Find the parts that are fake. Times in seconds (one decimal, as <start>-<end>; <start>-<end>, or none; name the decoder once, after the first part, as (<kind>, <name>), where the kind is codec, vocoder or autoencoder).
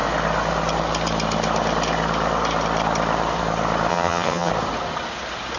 3.9-4.5 (vocoder, HiFi-GAN)